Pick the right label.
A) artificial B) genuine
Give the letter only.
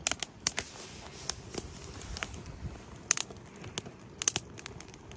B